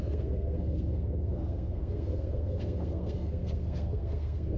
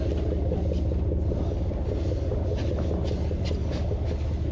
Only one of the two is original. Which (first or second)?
second